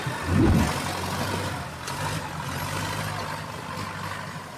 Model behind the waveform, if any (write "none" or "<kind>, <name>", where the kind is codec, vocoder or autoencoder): none